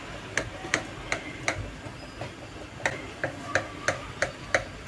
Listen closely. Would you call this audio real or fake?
real